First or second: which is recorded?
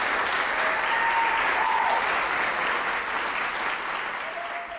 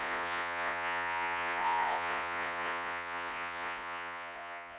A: first